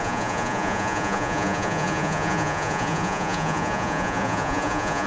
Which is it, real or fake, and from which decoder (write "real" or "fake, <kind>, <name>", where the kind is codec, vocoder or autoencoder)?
fake, vocoder, Vocos